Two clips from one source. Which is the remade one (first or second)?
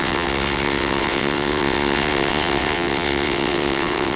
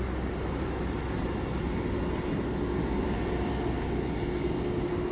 first